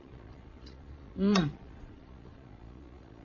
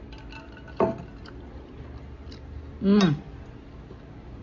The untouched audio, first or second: second